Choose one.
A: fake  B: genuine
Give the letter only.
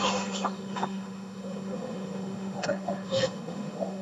A